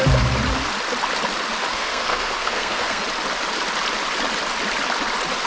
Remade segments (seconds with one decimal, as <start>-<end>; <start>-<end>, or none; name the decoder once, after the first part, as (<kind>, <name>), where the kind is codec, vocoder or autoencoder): 1.7-3.0 (codec, SNAC)